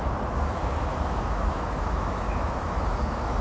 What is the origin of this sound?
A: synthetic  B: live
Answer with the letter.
A